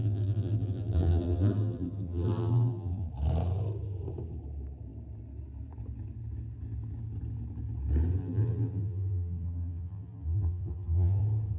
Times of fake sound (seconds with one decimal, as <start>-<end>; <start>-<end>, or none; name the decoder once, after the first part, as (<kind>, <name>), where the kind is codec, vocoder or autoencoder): 0.0-3.1 (vocoder, BigVGAN v2); 8.2-11.2